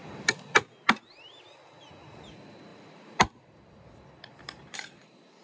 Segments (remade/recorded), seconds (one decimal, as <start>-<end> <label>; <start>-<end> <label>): 0.0-2.7 recorded; 2.7-5.4 remade